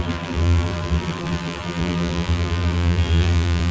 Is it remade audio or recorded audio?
remade